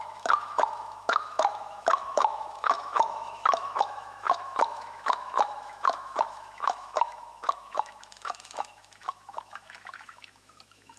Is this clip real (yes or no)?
no